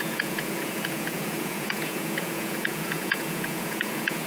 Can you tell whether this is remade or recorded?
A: remade